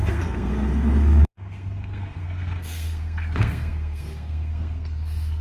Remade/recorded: remade